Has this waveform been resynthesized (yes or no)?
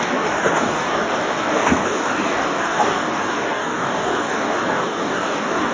yes